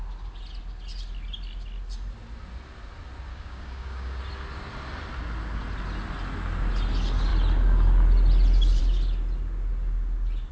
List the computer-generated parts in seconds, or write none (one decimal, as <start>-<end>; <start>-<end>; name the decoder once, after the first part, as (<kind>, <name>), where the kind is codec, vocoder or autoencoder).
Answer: 3.3-4.2 (codec, DAC)